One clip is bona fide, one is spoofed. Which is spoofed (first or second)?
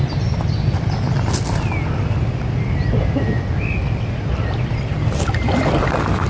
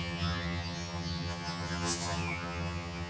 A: second